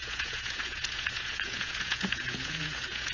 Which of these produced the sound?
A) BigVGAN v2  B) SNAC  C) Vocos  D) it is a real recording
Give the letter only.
C